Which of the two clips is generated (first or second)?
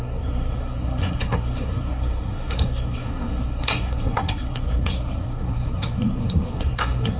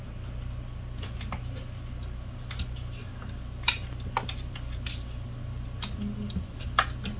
first